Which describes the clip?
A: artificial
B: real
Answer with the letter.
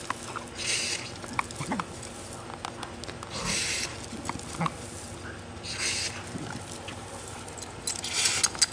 B